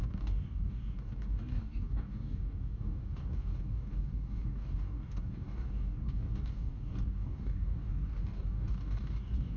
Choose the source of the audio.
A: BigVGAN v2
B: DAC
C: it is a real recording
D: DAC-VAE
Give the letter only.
B